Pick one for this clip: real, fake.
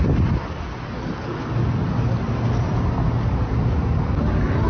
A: real